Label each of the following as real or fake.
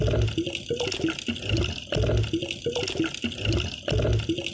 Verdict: real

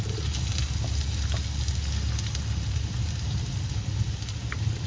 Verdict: real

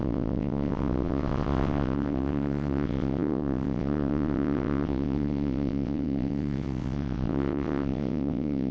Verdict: fake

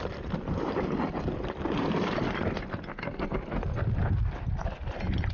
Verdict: real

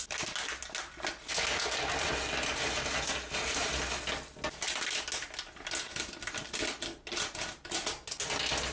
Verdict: real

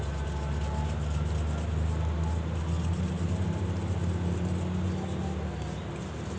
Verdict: real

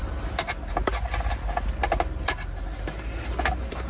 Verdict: real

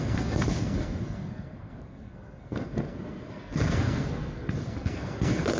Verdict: fake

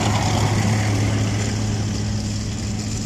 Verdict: real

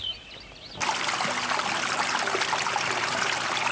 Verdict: real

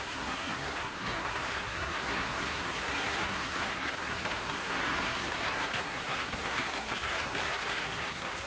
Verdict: fake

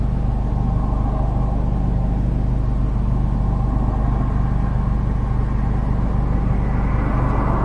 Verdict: real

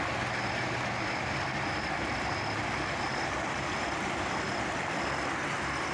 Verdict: real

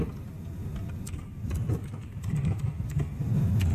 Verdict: real